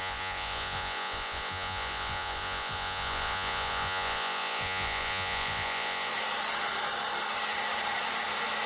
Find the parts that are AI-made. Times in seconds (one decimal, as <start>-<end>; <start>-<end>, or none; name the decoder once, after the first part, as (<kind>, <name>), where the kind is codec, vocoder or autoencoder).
0.0-6.1 (vocoder, Vocos)